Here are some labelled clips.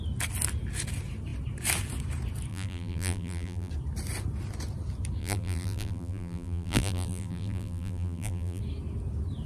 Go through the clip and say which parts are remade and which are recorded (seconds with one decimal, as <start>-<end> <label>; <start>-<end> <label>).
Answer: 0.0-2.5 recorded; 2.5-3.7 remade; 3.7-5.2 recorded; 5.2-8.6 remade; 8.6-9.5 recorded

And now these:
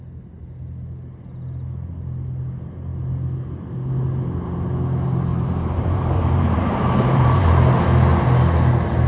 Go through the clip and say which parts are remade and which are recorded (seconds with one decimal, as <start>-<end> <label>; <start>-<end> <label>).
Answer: 0.0-5.3 recorded; 5.3-7.5 remade; 7.5-9.1 recorded

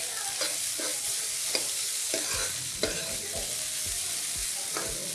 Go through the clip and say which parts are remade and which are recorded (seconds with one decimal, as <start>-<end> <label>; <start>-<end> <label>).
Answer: 0.0-0.9 recorded; 0.9-4.0 remade; 4.0-5.1 recorded

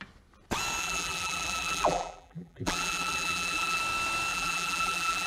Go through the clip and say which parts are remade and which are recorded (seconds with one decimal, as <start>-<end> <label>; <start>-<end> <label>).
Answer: 0.0-0.8 recorded; 0.8-3.8 remade; 3.8-4.3 recorded; 4.3-5.3 remade

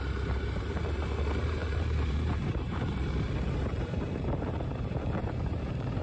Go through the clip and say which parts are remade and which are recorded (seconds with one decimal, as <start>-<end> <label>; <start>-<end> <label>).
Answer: 0.0-6.0 remade